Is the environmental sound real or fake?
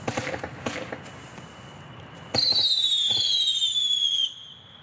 real